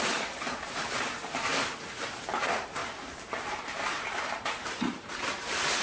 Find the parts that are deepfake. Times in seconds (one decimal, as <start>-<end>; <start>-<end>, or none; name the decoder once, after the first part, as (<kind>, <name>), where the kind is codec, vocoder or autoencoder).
0.0-1.5 (vocoder, BigVGAN v2); 2.1-2.8; 3.3-5.8